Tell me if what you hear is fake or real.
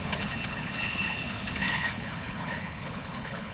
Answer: fake